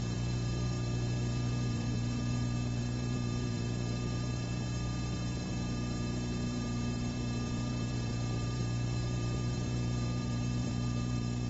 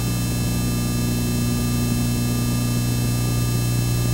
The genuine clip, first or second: second